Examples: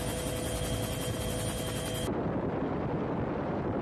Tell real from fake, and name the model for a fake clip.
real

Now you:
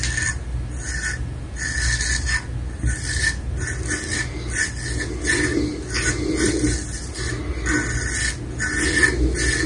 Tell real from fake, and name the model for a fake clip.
real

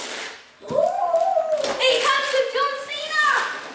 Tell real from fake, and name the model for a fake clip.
real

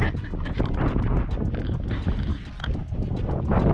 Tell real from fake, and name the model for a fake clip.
real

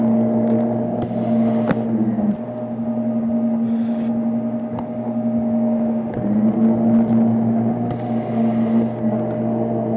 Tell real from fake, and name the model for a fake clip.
real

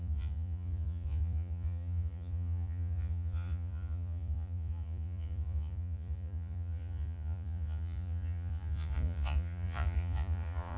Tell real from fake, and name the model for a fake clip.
fake, vocoder, Vocos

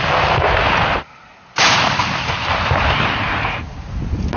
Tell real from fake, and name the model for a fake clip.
real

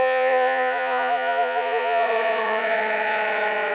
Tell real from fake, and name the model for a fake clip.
fake, vocoder, Vocos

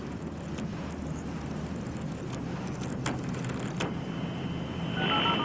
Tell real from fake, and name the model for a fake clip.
real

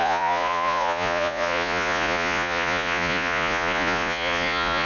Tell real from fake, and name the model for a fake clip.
fake, vocoder, Vocos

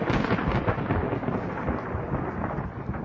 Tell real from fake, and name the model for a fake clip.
real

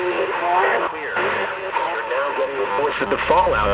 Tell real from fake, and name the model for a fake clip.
real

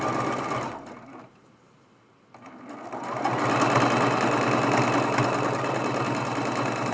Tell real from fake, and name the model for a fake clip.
real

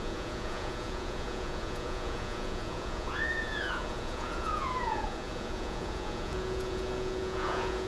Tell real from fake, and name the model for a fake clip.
fake, vocoder, Vocos